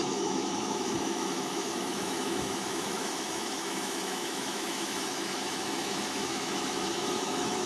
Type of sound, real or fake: fake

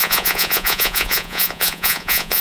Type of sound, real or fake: fake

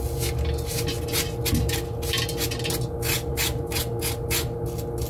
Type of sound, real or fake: real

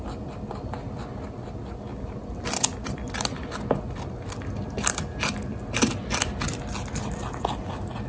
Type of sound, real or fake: real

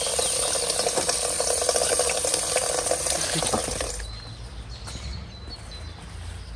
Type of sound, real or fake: real